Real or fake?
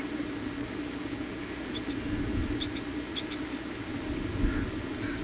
real